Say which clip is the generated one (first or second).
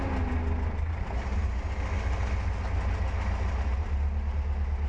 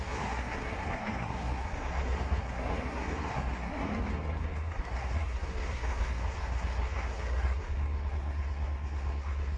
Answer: second